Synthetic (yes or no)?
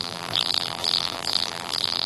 yes